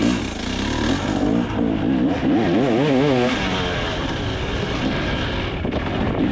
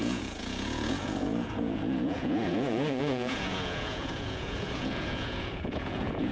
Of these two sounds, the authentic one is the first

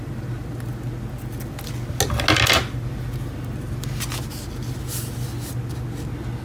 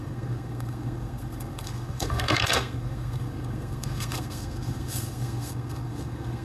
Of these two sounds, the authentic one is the first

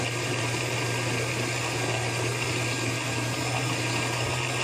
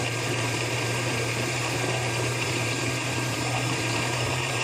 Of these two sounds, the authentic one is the first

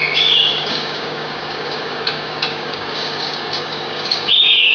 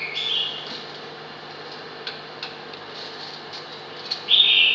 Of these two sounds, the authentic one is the second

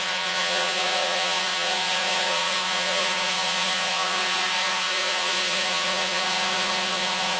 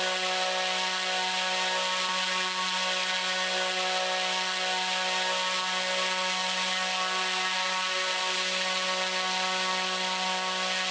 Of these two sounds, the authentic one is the second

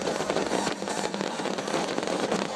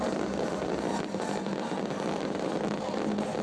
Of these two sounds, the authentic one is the second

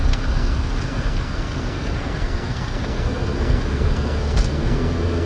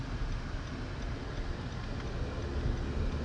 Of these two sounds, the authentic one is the second